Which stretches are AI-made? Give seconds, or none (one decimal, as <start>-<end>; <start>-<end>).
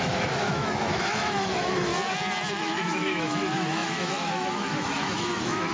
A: 0.0-1.9; 2.5-5.7